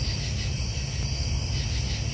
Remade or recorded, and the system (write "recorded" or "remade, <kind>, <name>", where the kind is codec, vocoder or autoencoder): recorded